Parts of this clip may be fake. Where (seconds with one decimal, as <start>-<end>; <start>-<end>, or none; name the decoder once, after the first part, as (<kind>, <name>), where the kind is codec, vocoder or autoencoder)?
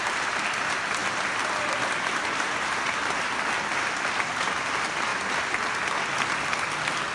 none